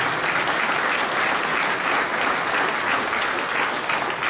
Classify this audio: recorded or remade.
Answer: recorded